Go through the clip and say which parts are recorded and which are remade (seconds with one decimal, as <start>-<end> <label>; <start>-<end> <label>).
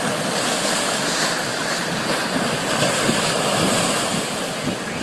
0.0-1.5 recorded; 1.5-2.0 remade; 2.0-5.0 recorded